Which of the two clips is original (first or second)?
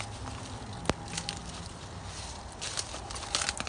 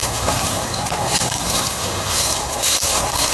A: first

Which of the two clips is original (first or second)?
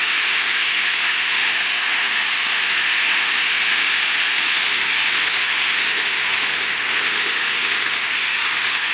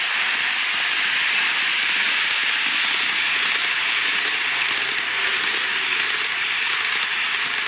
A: second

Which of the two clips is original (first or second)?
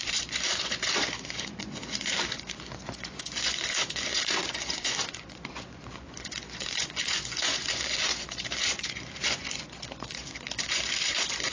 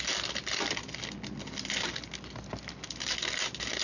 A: second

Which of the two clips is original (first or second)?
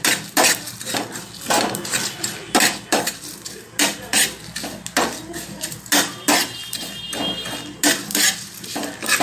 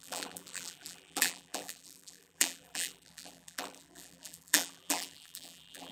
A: first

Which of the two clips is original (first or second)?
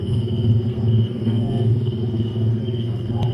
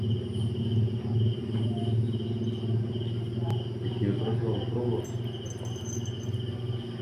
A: second